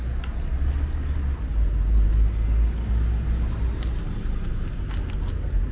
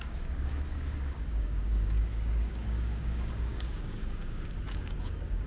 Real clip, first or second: first